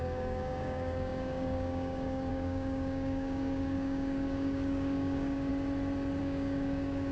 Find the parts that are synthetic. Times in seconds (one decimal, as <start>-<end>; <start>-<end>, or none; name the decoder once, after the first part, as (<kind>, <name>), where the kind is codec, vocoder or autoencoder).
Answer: 0.0-5.5 (codec, DAC); 6.2-7.1